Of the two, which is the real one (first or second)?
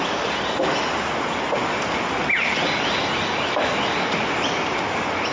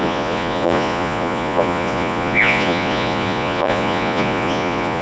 first